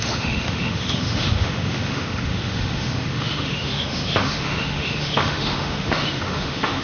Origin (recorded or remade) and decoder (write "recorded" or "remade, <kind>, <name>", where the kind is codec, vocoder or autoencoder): remade, autoencoder, DAC-VAE